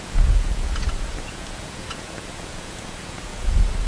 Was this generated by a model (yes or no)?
yes